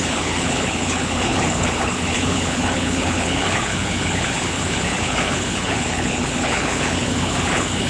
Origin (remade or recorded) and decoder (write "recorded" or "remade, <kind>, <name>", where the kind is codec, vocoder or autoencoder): remade, codec, HILCodec